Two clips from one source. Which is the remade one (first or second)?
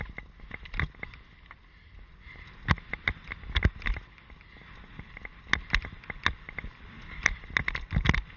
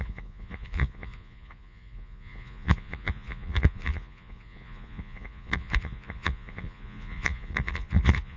second